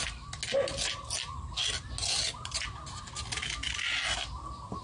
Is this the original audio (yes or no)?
yes